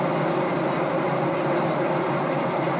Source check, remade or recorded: recorded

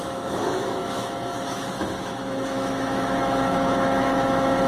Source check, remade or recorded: remade